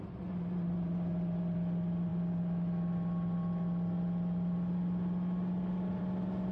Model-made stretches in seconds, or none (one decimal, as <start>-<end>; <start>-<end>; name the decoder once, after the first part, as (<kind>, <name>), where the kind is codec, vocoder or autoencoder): none